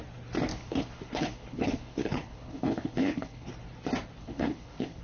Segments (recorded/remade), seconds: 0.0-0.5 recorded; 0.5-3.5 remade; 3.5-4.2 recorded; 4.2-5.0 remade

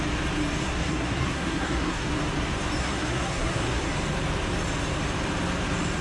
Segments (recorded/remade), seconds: 0.0-0.6 recorded; 0.6-2.1 remade; 2.1-2.8 recorded; 2.8-3.9 remade; 3.9-6.0 recorded

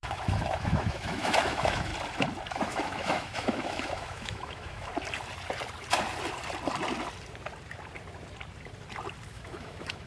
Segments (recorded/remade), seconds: 0.0-1.9 remade; 1.9-2.5 recorded; 2.5-4.9 remade; 4.9-9.3 recorded; 9.3-10.1 remade

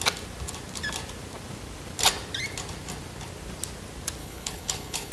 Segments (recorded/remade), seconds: 0.0-4.2 recorded; 4.2-5.1 remade

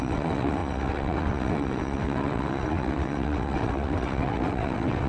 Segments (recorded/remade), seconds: 0.0-5.1 remade

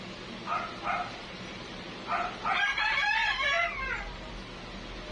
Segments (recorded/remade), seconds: 0.0-1.2 recorded; 1.2-4.3 remade; 4.3-5.1 recorded

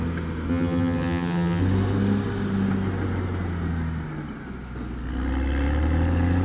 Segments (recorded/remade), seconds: 0.0-0.5 recorded; 0.5-1.6 remade; 1.6-6.4 recorded

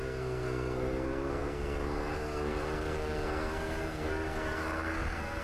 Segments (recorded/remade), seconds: 0.0-5.4 remade